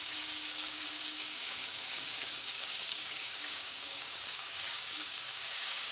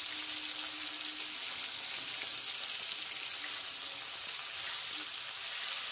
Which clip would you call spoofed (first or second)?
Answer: first